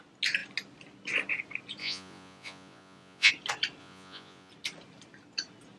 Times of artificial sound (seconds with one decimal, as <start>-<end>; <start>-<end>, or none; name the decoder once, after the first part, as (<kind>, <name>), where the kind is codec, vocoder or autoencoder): 1.8-3.3 (vocoder, Vocos); 3.8-4.5